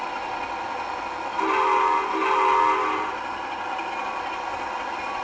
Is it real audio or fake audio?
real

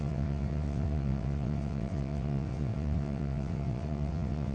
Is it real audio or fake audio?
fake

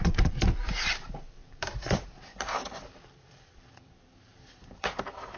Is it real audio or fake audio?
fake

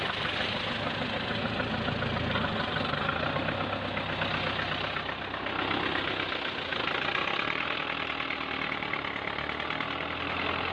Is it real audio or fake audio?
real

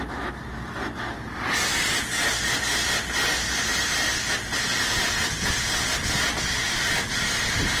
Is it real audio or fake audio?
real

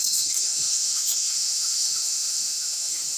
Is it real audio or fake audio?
fake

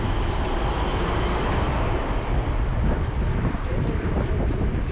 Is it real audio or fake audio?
real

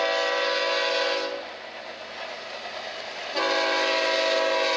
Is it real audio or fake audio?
real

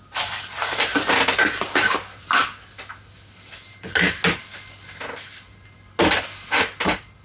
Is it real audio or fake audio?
real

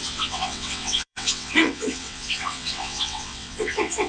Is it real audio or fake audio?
fake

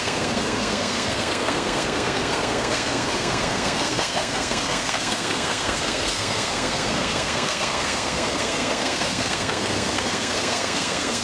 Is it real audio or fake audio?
fake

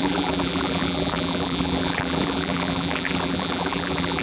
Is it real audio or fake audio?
fake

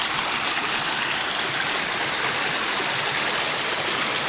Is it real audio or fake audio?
real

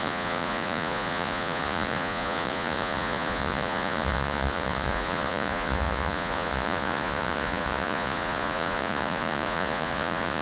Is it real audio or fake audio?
fake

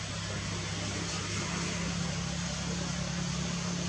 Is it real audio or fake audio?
real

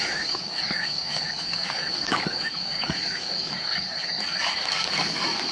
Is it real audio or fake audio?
fake